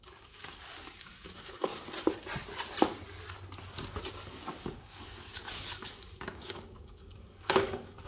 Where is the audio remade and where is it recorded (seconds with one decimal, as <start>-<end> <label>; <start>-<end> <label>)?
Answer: 0.0-1.7 remade; 1.7-4.1 recorded; 4.1-8.1 remade